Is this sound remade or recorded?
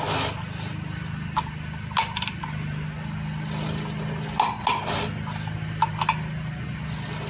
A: recorded